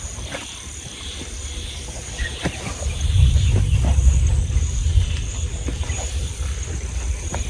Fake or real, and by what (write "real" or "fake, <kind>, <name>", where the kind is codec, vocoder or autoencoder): real